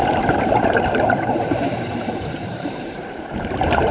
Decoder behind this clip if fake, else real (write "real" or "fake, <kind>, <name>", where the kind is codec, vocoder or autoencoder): fake, vocoder, BigVGAN v2